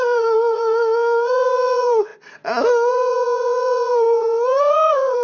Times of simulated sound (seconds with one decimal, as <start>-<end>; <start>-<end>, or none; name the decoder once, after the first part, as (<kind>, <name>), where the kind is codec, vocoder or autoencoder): 0.0-2.1 (vocoder, Vocos); 2.9-5.2